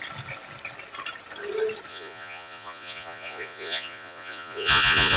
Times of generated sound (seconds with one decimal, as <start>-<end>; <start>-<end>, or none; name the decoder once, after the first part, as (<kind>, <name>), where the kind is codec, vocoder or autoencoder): 1.9-5.2 (vocoder, Vocos)